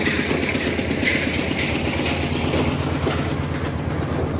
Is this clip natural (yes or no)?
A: yes